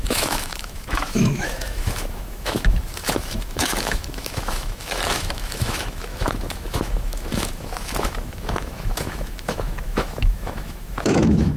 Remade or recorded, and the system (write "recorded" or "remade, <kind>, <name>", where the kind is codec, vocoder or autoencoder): remade, autoencoder, DAC-VAE